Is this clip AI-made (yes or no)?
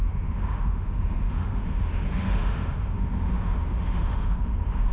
yes